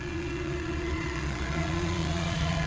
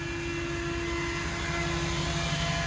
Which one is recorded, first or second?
second